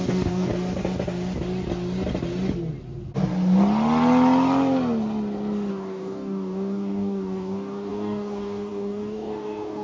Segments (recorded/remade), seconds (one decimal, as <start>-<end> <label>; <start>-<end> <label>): 0.0-0.5 remade; 0.5-5.7 recorded; 5.7-9.8 remade